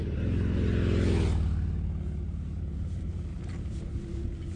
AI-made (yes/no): no